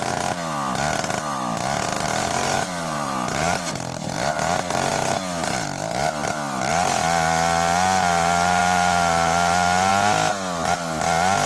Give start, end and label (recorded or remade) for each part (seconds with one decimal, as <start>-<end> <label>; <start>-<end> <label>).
0.0-2.2 recorded; 2.2-3.6 remade; 3.6-11.5 recorded